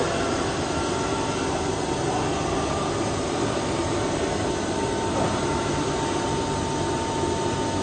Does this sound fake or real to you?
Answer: real